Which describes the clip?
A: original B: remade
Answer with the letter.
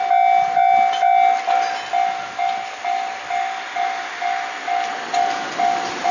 A